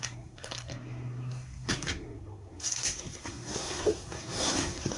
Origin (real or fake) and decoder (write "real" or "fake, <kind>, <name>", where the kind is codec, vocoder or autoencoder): fake, codec, SNAC